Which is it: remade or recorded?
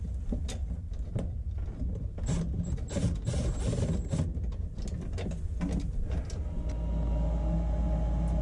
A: recorded